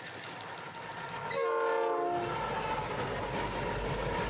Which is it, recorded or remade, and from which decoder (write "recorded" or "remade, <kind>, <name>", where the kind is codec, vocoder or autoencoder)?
recorded